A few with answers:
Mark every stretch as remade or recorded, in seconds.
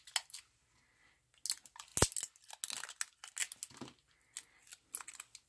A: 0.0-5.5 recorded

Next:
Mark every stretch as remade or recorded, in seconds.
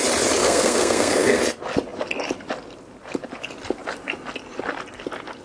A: 0.0-0.4 recorded; 0.4-1.4 remade; 1.4-5.4 recorded